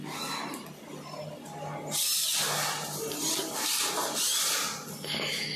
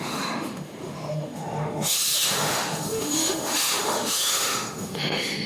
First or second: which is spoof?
second